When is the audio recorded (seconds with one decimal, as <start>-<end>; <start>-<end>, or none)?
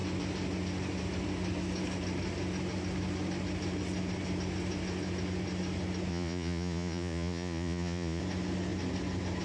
0.0-6.1; 8.2-9.4